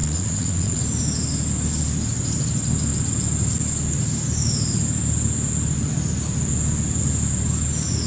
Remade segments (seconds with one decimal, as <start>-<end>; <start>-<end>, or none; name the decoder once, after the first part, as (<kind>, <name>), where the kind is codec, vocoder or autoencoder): 0.0-0.8 (vocoder, Vocos)